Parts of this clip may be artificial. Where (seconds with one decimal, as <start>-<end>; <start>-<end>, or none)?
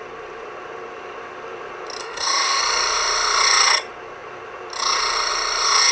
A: 2.0-2.6